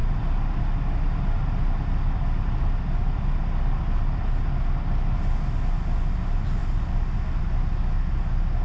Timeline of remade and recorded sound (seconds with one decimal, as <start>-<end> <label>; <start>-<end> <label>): 0.0-8.6 recorded